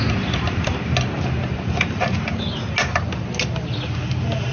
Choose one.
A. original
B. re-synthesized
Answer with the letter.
A